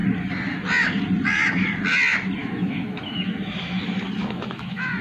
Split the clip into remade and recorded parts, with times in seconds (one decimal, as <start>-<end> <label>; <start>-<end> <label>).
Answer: 0.0-2.4 recorded; 2.4-3.8 remade; 3.8-4.2 recorded; 4.2-5.0 remade